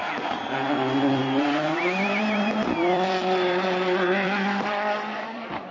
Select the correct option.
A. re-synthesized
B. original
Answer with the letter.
A